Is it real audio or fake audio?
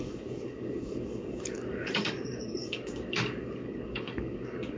fake